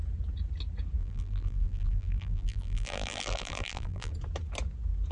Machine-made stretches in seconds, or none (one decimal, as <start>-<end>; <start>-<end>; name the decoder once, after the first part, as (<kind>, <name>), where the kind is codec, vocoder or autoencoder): 1.0-4.1 (vocoder, BigVGAN v2)